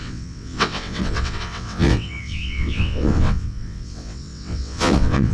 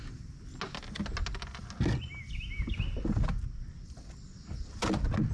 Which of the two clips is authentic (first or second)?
second